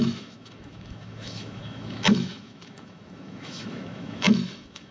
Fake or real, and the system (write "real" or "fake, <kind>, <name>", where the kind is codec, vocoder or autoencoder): fake, autoencoder, DAC-VAE